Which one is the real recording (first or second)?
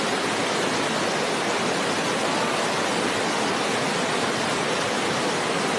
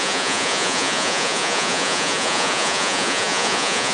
first